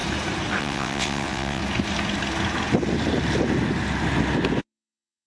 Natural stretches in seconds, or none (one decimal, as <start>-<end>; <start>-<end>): 0.0-0.6; 1.6-4.6